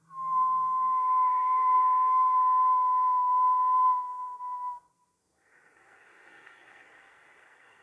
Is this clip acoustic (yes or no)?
no